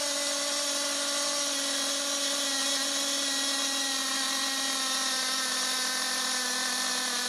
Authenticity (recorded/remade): recorded